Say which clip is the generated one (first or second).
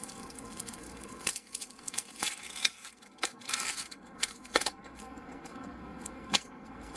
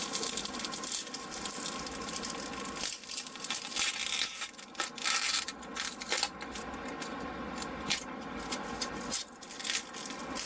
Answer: first